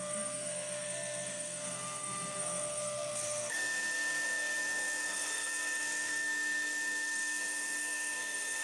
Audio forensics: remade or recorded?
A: remade